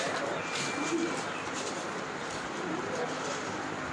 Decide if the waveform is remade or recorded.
recorded